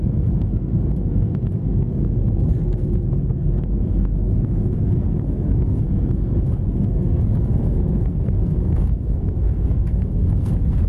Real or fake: fake